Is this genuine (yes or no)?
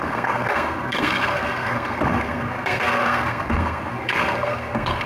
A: no